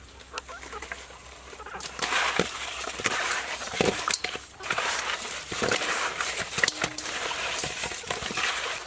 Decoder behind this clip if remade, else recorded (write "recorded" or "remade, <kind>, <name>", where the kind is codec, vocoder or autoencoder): recorded